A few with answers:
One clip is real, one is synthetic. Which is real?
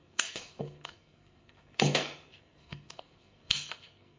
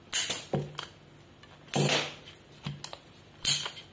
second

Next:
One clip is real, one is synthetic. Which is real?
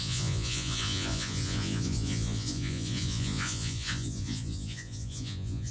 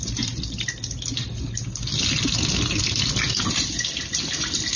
second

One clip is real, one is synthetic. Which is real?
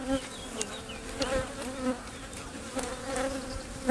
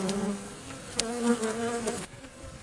first